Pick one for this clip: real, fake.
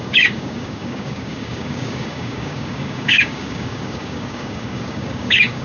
fake